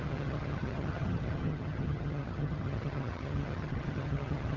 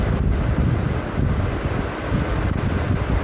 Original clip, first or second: second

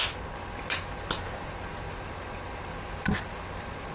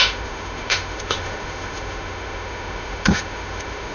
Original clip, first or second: first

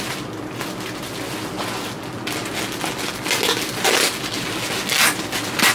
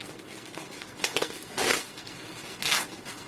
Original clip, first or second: first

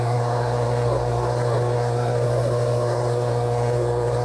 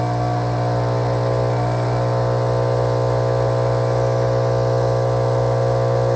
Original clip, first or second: second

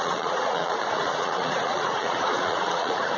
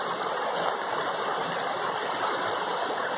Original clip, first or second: second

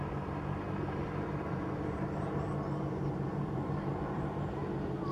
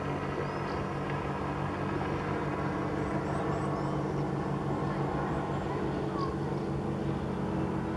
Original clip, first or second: second